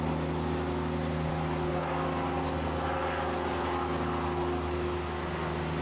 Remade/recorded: recorded